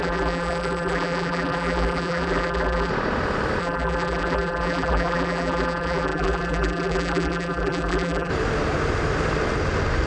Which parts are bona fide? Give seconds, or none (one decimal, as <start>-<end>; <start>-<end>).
2.9-3.6; 8.3-10.1